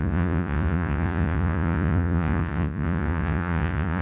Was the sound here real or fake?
fake